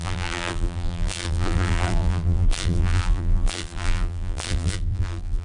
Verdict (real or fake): fake